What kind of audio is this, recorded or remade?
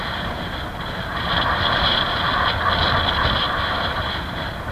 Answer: recorded